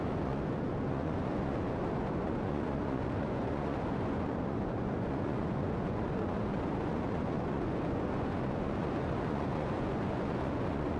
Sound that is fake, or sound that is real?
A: fake